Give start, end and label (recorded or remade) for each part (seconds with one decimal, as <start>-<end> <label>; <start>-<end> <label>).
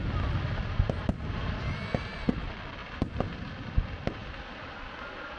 0.0-2.8 recorded; 2.8-3.5 remade; 3.5-5.4 recorded